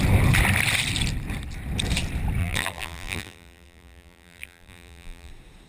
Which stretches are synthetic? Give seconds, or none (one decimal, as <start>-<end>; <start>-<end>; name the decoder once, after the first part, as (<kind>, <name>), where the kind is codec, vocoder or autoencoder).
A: 2.4-5.3 (vocoder, BigVGAN v2)

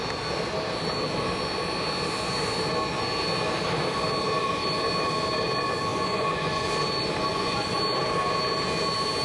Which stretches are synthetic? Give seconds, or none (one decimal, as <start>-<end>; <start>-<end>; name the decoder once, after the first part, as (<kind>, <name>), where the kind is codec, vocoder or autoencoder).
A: 5.9-6.7 (vocoder, Vocos); 7.3-7.8

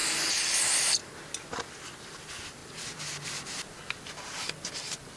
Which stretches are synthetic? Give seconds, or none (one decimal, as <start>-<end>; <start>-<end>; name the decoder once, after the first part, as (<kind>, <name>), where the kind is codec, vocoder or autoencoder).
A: none

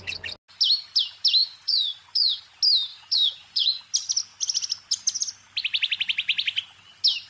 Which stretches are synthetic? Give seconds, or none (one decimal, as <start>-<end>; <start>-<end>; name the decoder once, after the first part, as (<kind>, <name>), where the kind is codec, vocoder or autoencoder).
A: 1.4-2.4 (vocoder, Vocos); 2.9-3.8

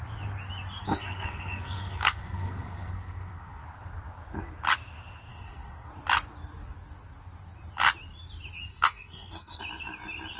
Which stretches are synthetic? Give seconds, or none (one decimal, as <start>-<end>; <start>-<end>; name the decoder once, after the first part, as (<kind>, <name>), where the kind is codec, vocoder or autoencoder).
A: 0.8-3.6 (codec, SNAC); 5.3-5.9; 8.7-9.6

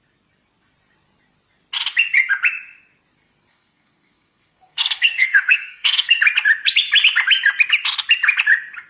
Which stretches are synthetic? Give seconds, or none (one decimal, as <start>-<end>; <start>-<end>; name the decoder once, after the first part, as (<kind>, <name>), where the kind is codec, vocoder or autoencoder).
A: 3.5-6.2 (codec, SNAC)

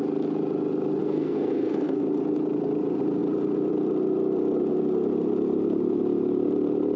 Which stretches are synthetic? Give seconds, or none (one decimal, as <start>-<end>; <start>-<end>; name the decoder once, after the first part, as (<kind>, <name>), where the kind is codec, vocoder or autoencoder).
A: 1.0-2.0 (codec, SNAC)

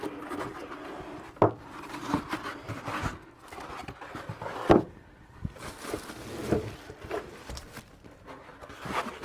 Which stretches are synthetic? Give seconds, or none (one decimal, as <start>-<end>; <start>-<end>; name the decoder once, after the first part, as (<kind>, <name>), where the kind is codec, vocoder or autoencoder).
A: none